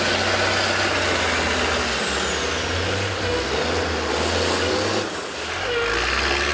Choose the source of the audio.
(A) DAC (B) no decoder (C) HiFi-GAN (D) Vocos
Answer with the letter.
B